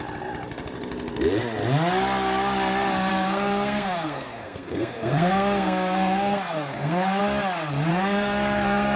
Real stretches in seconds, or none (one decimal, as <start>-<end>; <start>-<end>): 0.0-3.1; 7.2-7.9